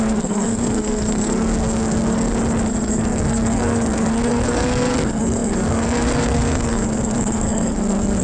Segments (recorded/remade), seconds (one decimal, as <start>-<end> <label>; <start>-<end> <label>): 0.0-2.3 remade; 2.3-2.9 recorded; 2.9-8.2 remade

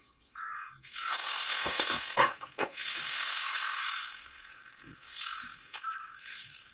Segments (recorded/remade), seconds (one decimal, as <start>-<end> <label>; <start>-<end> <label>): 0.0-6.7 remade